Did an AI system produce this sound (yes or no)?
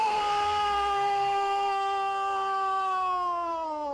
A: yes